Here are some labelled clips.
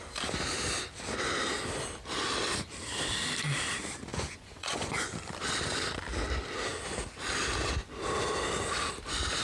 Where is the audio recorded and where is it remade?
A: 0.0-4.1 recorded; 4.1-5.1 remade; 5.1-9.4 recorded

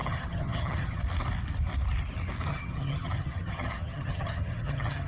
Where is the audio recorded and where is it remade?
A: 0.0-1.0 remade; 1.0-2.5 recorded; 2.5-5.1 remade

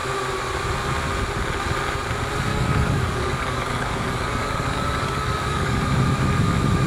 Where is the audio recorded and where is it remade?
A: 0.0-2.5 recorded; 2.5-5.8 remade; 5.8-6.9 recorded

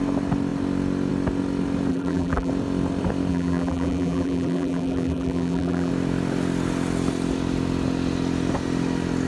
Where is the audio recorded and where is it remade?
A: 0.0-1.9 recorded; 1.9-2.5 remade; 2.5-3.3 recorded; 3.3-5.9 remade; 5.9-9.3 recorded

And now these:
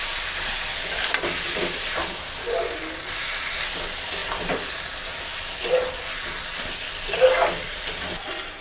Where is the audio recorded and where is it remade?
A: 0.0-8.6 recorded